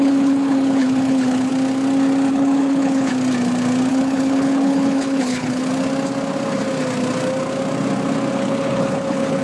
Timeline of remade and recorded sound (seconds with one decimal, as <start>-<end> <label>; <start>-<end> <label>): 0.0-1.5 remade; 1.5-2.3 recorded; 2.3-3.1 remade; 3.1-3.9 recorded; 3.9-5.7 remade; 5.7-8.3 recorded; 8.3-9.4 remade